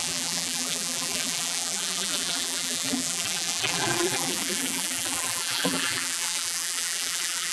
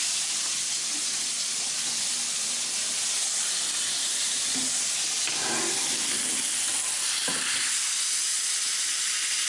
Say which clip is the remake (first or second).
first